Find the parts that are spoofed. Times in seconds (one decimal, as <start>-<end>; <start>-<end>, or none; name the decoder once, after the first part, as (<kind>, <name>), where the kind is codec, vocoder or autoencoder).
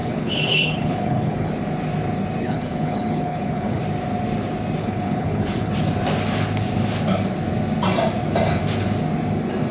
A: 0.0-1.5 (codec, HILCodec); 2.4-3.8; 4.8-5.7